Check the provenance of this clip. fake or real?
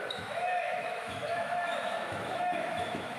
fake